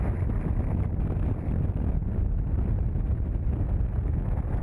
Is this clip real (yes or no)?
yes